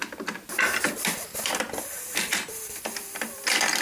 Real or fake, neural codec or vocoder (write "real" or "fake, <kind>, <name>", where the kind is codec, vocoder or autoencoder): real